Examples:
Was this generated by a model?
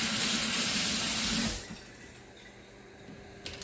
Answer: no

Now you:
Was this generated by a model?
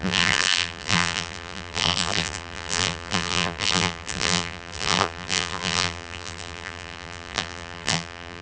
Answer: yes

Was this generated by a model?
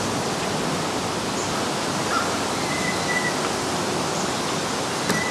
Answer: no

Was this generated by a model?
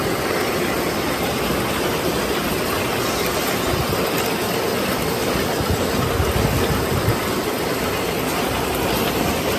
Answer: no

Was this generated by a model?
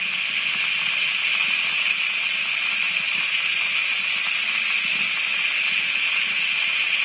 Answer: no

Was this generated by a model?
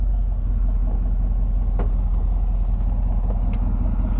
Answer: no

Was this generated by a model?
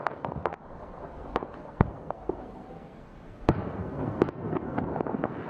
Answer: yes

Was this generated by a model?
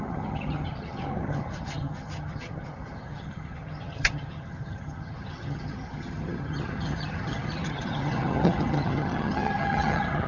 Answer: yes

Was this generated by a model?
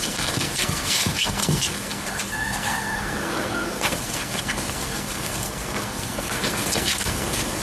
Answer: yes